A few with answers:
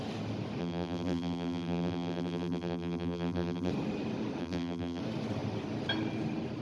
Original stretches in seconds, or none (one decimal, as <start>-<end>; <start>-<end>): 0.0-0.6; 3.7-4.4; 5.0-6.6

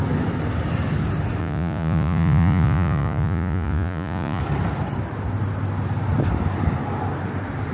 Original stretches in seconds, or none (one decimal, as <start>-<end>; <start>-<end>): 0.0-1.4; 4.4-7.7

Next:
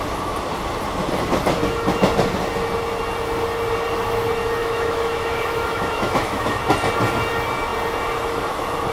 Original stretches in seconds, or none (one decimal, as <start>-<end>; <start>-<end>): 0.0-4.6; 6.6-8.9

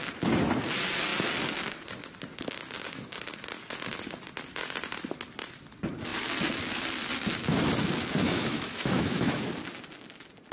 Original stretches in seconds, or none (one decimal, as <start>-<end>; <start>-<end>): 0.0-8.2; 9.4-10.5

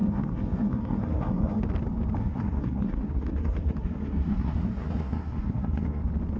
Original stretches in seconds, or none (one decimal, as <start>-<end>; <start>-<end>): 1.6-2.2; 6.0-6.4

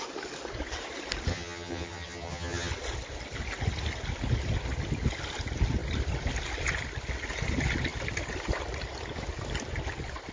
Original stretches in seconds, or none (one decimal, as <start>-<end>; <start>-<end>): 0.0-1.3; 2.7-10.3